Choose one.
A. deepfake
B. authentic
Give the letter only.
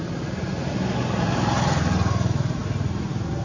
B